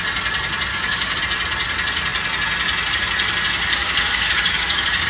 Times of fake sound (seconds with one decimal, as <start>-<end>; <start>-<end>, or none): 0.7-1.2; 3.7-5.1